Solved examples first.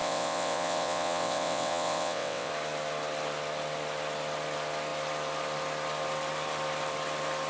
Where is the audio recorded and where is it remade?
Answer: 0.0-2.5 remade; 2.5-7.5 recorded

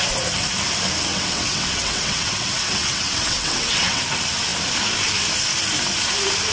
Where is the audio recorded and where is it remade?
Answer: 0.0-1.1 recorded; 1.1-4.0 remade; 4.0-6.5 recorded